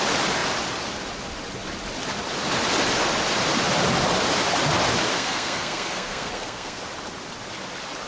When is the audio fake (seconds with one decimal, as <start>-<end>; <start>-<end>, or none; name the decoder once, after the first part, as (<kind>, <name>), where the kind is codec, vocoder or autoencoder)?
5.1-6.8 (codec, SNAC)